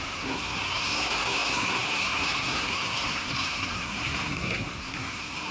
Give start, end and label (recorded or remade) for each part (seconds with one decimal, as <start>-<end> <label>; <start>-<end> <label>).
0.0-5.5 remade

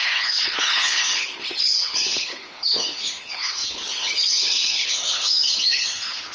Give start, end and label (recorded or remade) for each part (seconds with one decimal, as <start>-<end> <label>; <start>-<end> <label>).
0.0-6.3 remade

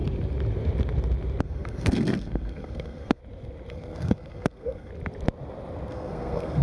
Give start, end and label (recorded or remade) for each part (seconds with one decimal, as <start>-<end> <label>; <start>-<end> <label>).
0.0-1.4 recorded; 1.4-3.2 remade; 3.2-3.7 recorded; 3.7-4.9 remade; 4.9-5.9 recorded; 5.9-6.6 remade

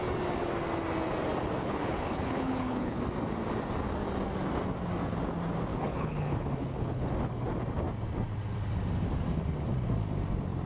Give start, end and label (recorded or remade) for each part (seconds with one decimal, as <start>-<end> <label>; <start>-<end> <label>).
0.0-1.6 recorded; 1.6-3.0 remade; 3.0-5.7 recorded; 5.7-7.1 remade; 7.1-10.7 recorded

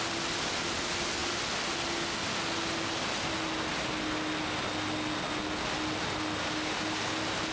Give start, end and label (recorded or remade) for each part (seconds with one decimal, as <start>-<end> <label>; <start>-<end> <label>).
0.0-7.5 recorded

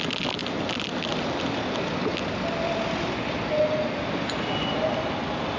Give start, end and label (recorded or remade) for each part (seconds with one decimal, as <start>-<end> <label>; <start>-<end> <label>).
0.0-5.6 recorded